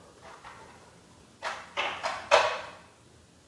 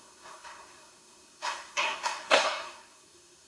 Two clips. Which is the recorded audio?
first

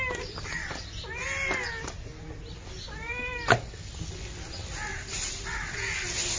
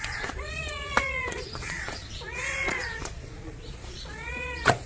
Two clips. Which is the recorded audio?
first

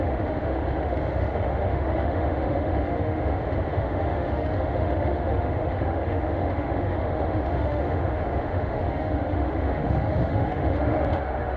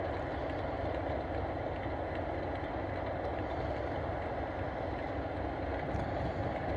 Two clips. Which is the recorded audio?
second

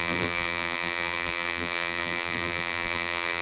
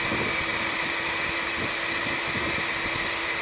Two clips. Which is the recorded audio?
second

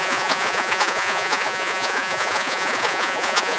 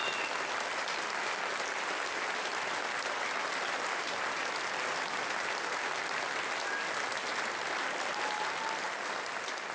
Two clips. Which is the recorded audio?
second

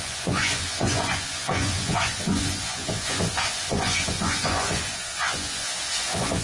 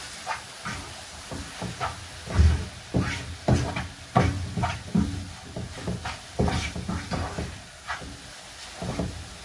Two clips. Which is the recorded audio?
second